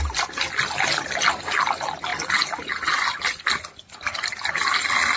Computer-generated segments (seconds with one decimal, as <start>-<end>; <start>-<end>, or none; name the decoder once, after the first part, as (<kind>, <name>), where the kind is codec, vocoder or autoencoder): none